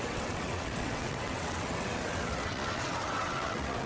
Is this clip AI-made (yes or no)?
yes